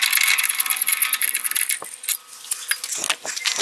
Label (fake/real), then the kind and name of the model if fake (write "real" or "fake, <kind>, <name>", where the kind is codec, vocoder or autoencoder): real